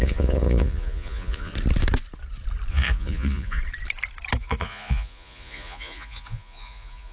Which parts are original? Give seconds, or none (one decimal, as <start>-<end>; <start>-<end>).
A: 1.5-2.7; 3.6-4.4